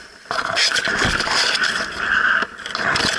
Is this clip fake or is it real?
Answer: real